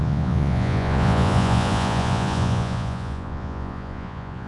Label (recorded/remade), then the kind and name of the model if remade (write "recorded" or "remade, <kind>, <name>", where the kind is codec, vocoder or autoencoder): remade, vocoder, Vocos